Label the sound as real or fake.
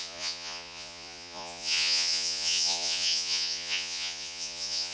fake